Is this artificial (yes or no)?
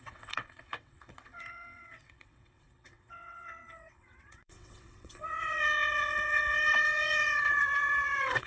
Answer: yes